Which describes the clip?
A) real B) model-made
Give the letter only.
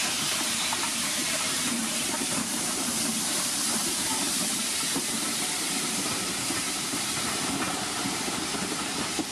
B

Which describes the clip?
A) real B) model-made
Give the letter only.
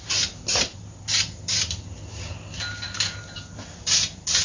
B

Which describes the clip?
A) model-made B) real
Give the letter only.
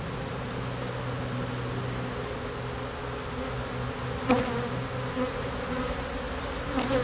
B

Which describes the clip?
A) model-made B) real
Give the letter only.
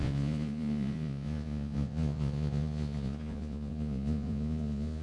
A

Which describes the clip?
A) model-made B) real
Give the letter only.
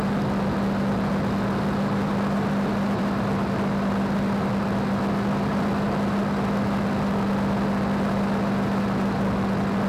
B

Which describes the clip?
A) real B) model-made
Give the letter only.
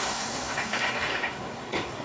B